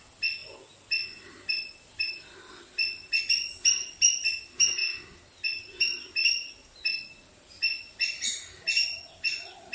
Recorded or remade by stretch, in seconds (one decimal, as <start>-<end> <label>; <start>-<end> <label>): 0.0-9.7 recorded